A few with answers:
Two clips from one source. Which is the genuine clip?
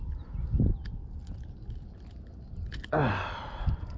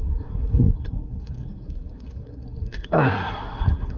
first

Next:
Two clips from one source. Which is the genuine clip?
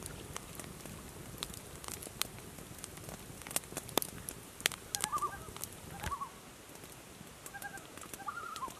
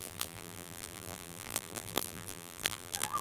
first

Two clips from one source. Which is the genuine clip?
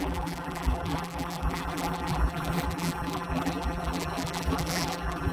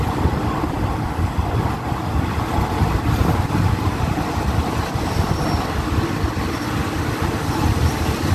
second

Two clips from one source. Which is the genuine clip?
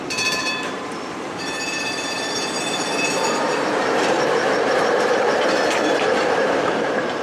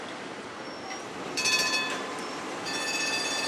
second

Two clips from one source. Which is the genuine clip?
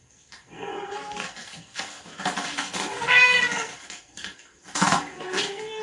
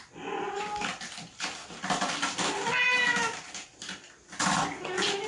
second